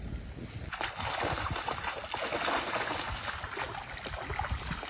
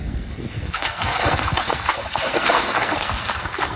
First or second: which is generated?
second